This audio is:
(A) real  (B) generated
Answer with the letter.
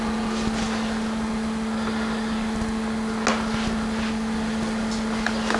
A